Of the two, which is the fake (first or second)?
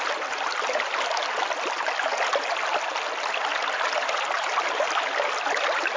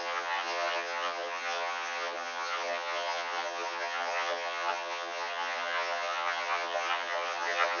second